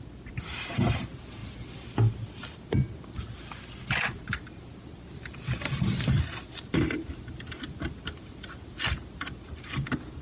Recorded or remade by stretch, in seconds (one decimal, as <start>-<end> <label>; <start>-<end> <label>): 0.0-10.2 recorded